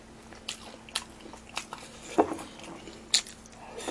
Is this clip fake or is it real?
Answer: real